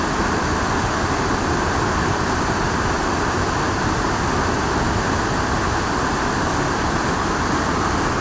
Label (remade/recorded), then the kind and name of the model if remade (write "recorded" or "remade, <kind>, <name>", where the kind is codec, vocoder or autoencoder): recorded